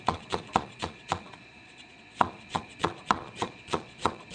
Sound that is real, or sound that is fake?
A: fake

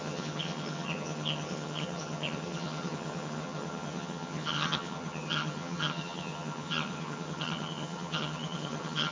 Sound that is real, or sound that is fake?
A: fake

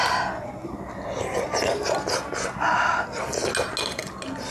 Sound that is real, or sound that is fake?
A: real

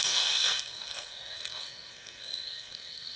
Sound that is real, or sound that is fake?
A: fake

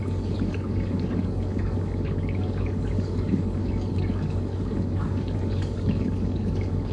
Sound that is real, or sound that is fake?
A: fake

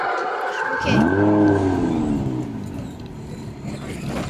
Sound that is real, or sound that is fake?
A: real